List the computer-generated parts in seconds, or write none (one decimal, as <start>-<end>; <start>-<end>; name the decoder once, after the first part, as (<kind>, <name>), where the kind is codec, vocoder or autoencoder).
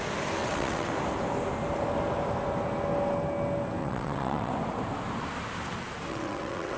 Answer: 0.4-0.9 (vocoder, WaveNeXt); 3.8-4.5; 6.1-6.8